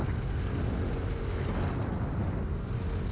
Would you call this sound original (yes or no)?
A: yes